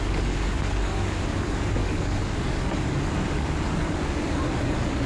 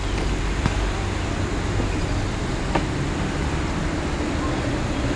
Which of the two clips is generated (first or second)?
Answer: first